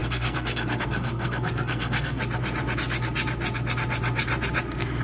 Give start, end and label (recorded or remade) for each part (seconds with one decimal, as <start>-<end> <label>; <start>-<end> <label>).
0.0-2.2 remade; 2.2-5.0 recorded